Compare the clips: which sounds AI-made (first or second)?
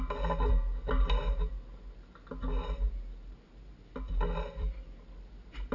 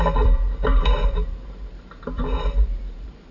second